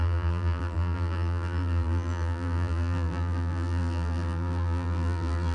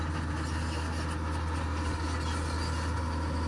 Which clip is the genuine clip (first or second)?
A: second